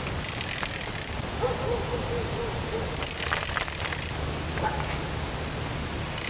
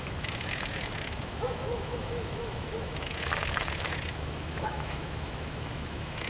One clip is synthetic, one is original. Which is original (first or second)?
first